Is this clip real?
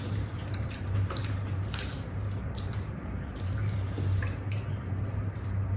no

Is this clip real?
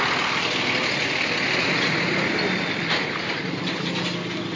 yes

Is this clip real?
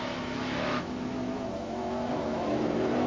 no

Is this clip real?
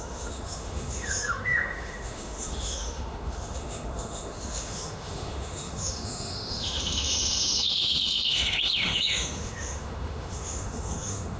no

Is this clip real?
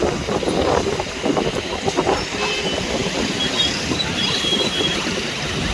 yes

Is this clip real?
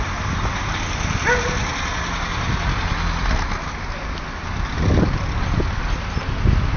yes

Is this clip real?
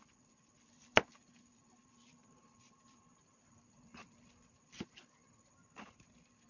yes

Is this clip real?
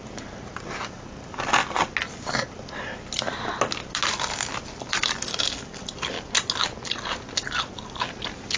yes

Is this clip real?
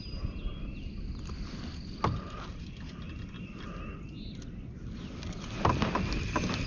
yes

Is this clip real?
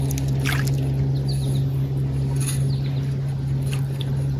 yes